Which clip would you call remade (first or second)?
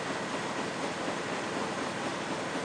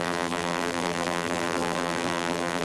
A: second